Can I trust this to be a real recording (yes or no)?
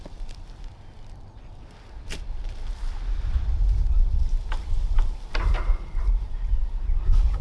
yes